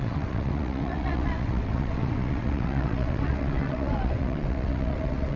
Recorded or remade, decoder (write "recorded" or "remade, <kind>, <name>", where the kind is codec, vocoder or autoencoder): remade, vocoder, WaveNeXt